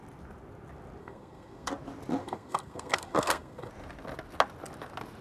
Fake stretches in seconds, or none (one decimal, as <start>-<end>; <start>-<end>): 1.0-1.7; 2.2-3.7